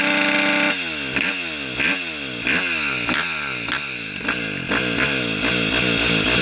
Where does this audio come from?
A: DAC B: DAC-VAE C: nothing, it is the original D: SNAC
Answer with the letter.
C